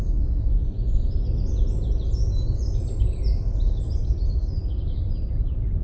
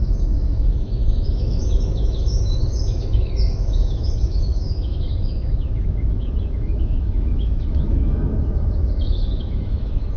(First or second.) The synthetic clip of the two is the second